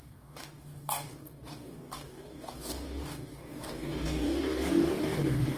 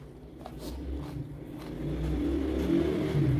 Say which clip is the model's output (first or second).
first